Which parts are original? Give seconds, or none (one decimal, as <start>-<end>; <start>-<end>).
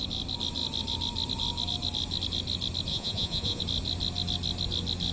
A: 0.0-2.9; 3.6-5.1